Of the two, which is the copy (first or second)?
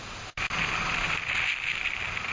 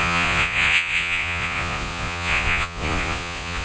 second